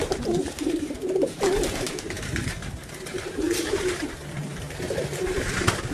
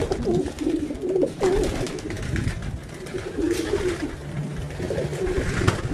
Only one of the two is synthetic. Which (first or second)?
first